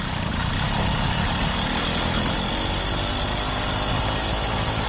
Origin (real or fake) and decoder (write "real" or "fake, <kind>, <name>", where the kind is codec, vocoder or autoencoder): real